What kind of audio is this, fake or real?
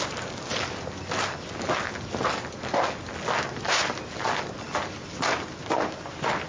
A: real